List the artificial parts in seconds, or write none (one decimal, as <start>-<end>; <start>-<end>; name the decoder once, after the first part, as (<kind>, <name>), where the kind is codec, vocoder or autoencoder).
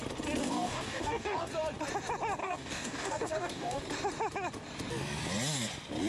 0.4-1.5 (codec, DAC); 2.4-3.8